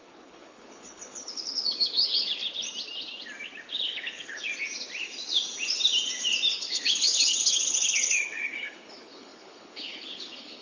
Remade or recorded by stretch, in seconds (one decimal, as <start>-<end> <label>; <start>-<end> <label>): 0.0-2.4 remade; 2.4-3.7 recorded; 3.7-4.5 remade; 4.5-6.5 recorded; 6.5-10.6 remade